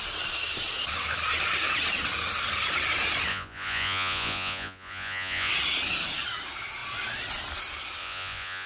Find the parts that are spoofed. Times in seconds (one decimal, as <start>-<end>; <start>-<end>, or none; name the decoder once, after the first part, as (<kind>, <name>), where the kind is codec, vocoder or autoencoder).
3.3-5.5 (vocoder, Vocos); 8.0-8.7